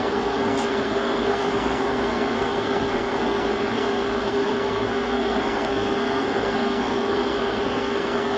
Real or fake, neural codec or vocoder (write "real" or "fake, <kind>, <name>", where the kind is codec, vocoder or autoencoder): fake, codec, SNAC